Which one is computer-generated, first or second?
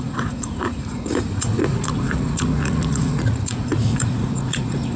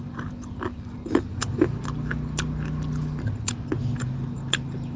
first